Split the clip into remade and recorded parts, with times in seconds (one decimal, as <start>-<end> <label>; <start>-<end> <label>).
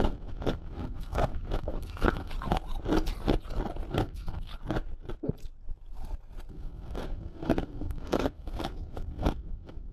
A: 0.0-2.3 remade; 2.3-3.9 recorded; 3.9-4.5 remade; 4.5-6.5 recorded; 6.5-9.9 remade